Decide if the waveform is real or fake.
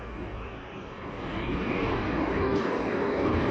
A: fake